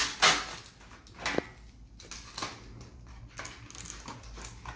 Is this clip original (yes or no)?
yes